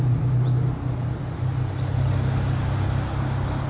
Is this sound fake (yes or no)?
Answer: no